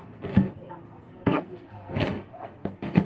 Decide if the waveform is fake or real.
fake